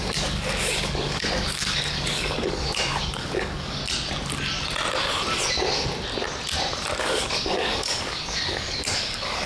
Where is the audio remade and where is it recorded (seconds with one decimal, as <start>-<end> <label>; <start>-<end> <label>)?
0.0-3.8 remade; 3.8-7.0 recorded; 7.0-9.5 remade